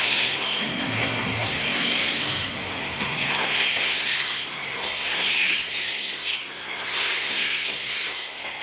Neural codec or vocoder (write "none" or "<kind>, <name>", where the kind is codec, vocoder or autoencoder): codec, SNAC